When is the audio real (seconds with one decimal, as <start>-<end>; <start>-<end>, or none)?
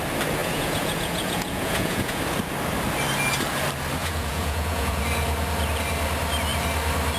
0.0-0.4; 2.2-4.0; 5.0-7.2